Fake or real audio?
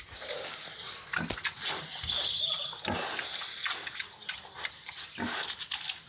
real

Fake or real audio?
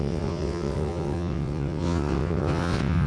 fake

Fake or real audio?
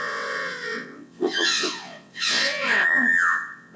fake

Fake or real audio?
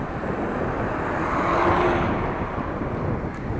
real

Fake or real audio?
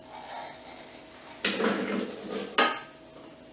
real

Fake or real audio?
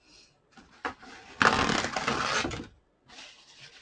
real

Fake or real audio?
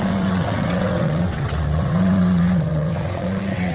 fake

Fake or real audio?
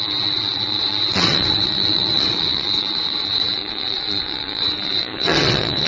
fake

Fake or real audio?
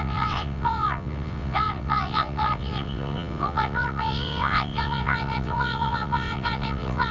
fake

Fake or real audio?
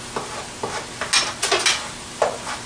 real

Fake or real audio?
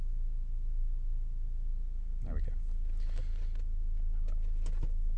real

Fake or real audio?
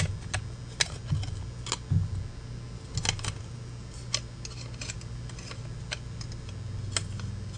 real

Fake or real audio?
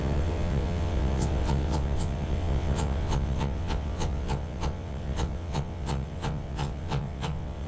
fake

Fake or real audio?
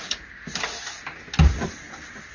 real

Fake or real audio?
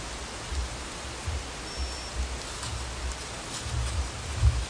real